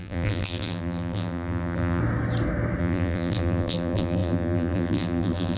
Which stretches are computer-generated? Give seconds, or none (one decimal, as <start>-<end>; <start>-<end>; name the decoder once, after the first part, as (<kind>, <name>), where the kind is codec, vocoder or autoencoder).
0.0-2.0 (vocoder, BigVGAN v2); 2.8-5.6